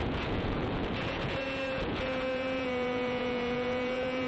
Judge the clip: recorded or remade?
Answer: remade